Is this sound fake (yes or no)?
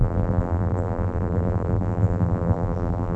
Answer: yes